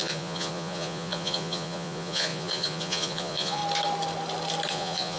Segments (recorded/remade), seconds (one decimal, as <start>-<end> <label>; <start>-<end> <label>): 0.0-3.6 remade; 3.6-4.7 recorded; 4.7-5.2 remade